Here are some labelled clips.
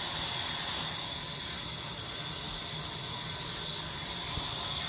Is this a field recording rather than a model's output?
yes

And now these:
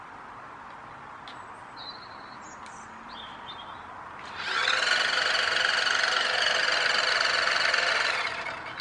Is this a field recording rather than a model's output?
yes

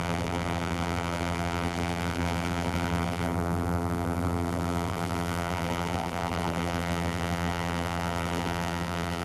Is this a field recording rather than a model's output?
no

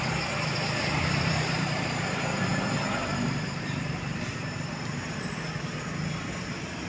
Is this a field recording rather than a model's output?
no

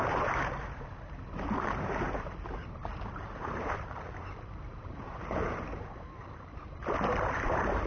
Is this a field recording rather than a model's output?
no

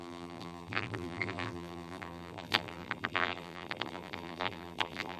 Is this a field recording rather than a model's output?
no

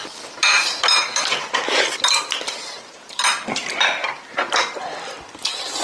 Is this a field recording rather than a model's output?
yes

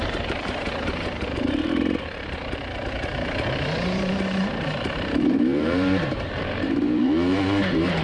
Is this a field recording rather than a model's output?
no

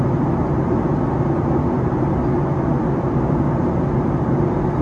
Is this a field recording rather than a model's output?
yes